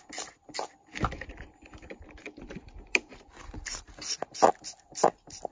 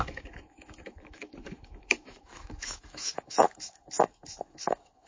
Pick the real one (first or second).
first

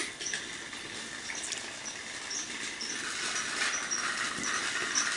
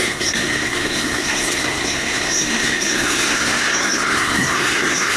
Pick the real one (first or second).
first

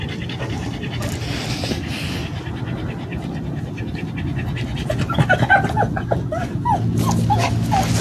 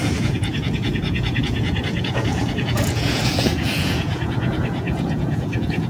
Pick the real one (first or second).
first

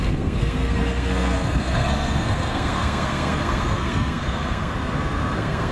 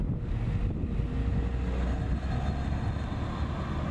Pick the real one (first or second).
second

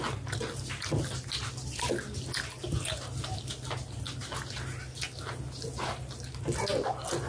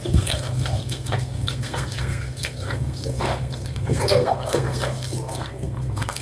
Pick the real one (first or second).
first